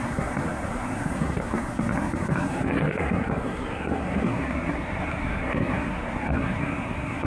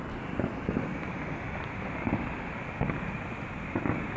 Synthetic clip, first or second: first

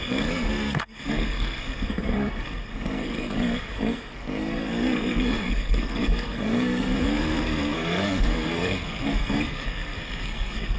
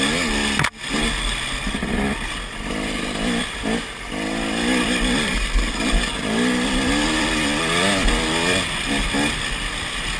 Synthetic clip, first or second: first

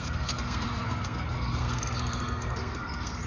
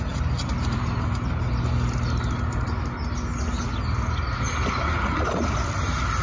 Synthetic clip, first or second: first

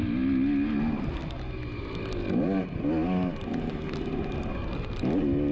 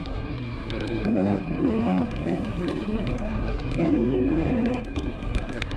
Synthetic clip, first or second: second